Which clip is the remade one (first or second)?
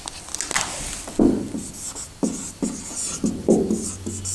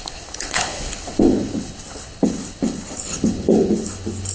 second